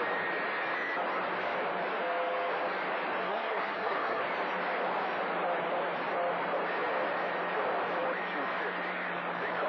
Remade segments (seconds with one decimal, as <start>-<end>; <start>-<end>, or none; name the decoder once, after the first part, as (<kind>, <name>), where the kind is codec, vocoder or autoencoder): 3.2-4.2 (codec, SNAC)